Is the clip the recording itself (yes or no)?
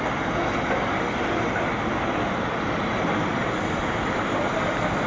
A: yes